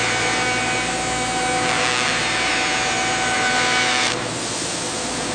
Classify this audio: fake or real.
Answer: real